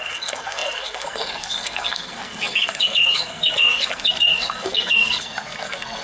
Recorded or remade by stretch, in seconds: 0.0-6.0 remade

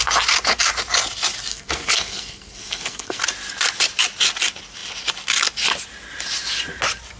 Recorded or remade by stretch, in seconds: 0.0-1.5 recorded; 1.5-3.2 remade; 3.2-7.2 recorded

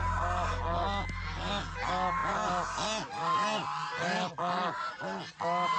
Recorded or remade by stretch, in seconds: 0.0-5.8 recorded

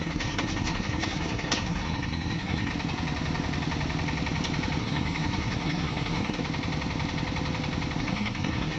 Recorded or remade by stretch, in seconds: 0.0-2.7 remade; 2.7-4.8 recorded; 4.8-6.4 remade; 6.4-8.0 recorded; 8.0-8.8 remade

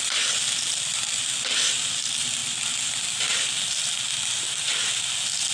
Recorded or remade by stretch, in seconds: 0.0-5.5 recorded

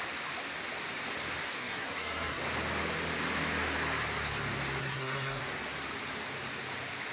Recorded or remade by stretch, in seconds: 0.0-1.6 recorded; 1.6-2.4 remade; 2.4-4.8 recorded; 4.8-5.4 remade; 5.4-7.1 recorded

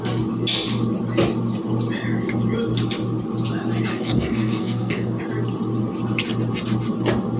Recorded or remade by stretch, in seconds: 0.0-3.9 recorded; 3.9-5.2 remade; 5.2-7.4 recorded

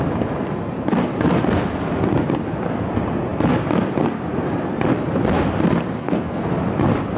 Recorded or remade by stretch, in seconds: 0.0-6.0 recorded; 6.0-6.5 remade; 6.5-7.2 recorded